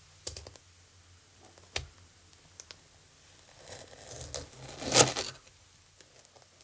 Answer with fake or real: real